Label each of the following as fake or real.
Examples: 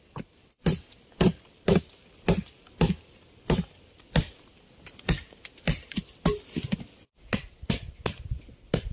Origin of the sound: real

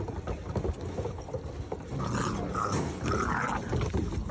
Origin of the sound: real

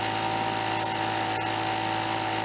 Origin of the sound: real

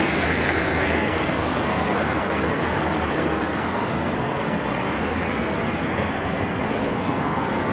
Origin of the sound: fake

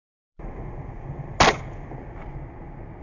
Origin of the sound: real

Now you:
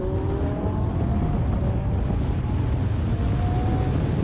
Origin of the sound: real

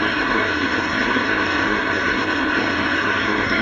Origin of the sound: fake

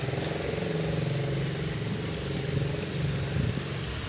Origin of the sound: real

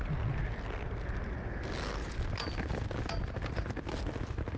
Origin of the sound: real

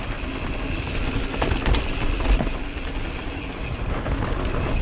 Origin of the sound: real